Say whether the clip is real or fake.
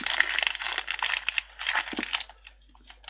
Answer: real